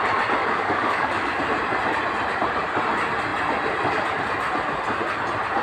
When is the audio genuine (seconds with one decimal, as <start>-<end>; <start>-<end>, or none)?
0.0-0.4; 1.4-5.6